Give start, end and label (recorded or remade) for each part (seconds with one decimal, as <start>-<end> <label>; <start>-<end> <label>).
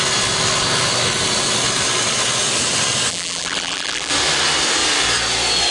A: 0.0-3.1 recorded; 3.1-4.1 remade; 4.1-5.7 recorded